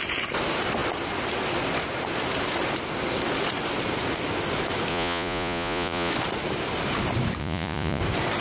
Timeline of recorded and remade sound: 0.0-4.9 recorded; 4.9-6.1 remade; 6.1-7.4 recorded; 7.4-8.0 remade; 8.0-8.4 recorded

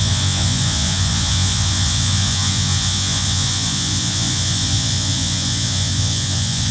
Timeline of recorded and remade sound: 0.0-6.7 remade